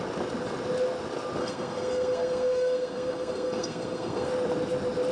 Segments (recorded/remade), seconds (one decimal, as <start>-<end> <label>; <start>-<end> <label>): 0.0-1.4 recorded; 1.4-4.3 remade; 4.3-5.1 recorded